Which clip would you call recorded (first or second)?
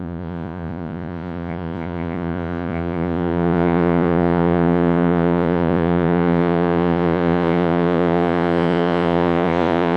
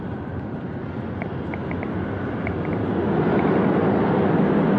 second